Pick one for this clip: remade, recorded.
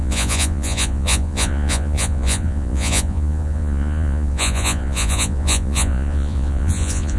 remade